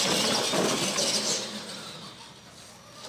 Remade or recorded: recorded